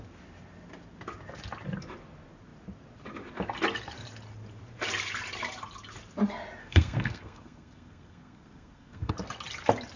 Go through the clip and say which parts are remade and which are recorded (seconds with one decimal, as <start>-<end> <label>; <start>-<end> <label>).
0.0-6.6 recorded; 6.6-9.1 remade; 9.1-10.0 recorded